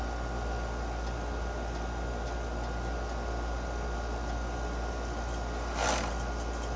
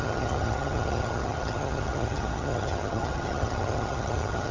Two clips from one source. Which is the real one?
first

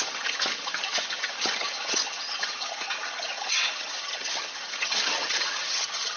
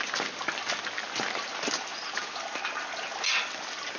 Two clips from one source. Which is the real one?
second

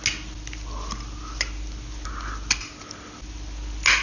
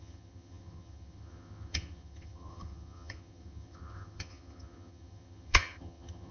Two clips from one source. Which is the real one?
first